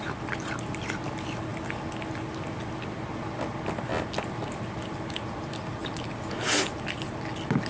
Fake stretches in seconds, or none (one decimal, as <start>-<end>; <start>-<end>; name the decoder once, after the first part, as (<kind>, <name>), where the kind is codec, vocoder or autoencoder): none